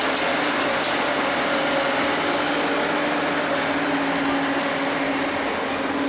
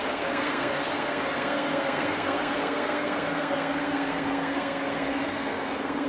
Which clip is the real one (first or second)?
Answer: first